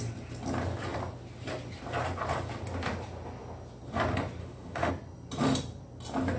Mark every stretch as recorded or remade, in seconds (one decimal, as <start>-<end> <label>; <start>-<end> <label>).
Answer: 0.0-4.4 recorded; 4.4-4.9 remade; 4.9-6.4 recorded